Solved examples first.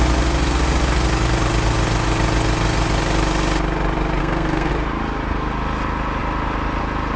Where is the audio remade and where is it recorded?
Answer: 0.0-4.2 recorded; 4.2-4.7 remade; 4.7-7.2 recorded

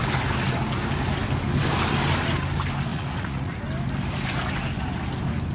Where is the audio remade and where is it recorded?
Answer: 0.0-2.9 recorded; 2.9-3.6 remade; 3.6-5.5 recorded

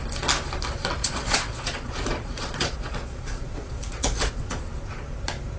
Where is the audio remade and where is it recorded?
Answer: 0.0-1.0 recorded; 1.0-4.4 remade; 4.4-5.6 recorded

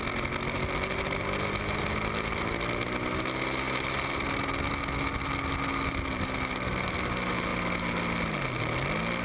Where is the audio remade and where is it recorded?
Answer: 0.0-9.2 recorded

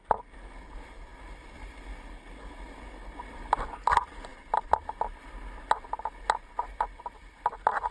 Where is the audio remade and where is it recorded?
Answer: 0.0-7.9 recorded

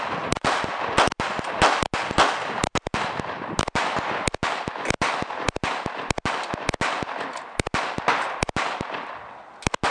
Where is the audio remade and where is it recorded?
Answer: 0.0-9.9 recorded

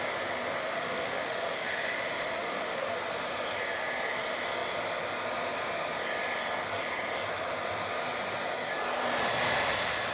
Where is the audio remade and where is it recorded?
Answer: 0.0-0.6 recorded; 0.6-2.9 remade; 2.9-10.1 recorded